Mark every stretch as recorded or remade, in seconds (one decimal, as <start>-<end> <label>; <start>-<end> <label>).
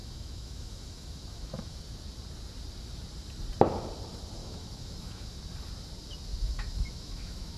0.0-1.8 remade; 1.8-4.4 recorded; 4.4-5.4 remade; 5.4-6.3 recorded; 6.3-7.6 remade